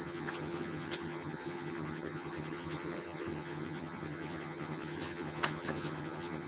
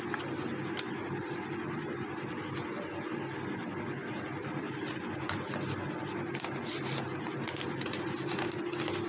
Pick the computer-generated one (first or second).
first